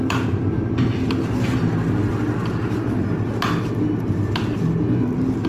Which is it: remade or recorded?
recorded